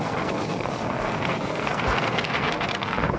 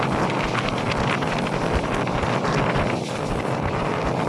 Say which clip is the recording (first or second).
second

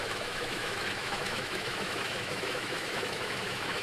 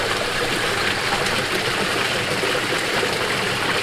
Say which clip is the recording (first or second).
second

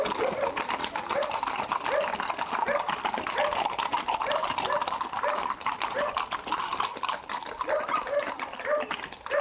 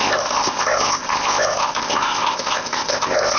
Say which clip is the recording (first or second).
first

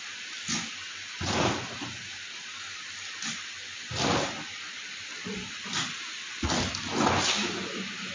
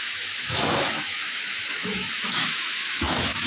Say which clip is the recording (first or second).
first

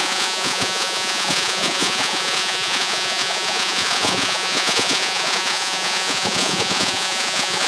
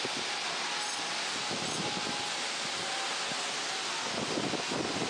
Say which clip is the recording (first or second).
second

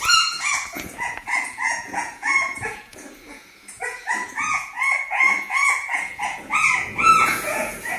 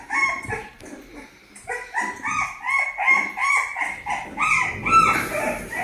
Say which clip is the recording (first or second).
second